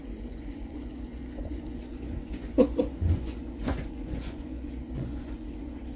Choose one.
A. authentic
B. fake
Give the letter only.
B